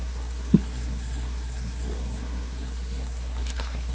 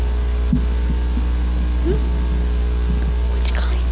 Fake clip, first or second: first